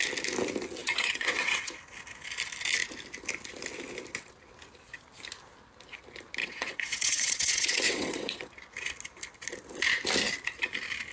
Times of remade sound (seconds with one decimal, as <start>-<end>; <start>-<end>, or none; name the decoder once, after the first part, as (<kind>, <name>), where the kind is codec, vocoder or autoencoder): 0.8-1.7 (vocoder, WaveNeXt); 6.4-8.4